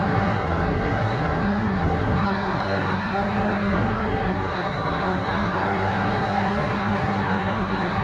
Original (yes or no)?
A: no